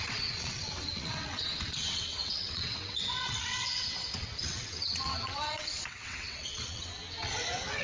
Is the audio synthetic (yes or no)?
yes